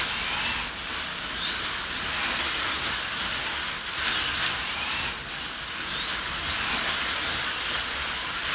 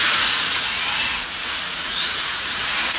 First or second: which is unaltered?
first